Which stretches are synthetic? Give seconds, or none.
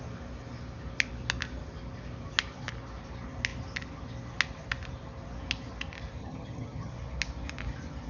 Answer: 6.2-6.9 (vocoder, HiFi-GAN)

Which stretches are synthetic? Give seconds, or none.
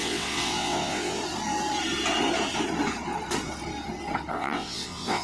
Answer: 0.0-1.2 (vocoder, WaveNeXt); 4.3-5.2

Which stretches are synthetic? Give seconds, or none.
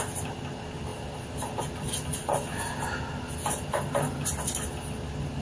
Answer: none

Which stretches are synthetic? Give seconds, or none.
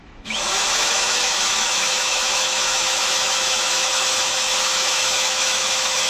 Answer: 0.0-6.1 (autoencoder, DAC-VAE)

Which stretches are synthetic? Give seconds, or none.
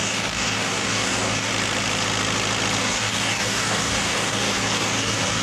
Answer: 0.0-1.5 (codec, DAC); 2.8-5.4